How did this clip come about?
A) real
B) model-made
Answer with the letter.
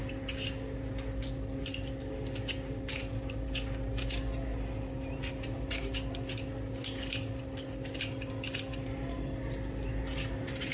A